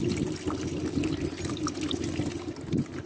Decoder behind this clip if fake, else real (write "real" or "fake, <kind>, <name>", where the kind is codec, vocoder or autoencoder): real